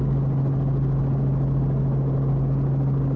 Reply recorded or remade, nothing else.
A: recorded